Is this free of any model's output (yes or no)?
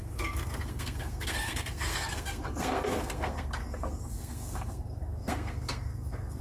no